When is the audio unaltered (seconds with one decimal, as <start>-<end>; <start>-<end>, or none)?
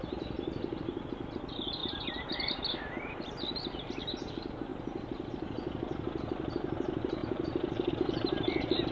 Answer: 0.0-1.8; 2.5-7.2; 7.9-8.9